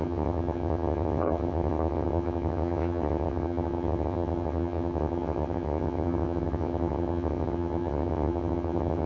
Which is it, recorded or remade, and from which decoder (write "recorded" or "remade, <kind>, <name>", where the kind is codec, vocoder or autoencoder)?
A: remade, vocoder, HiFi-GAN